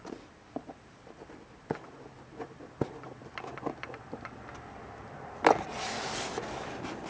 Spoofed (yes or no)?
yes